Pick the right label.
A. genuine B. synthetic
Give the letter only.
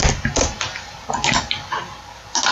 A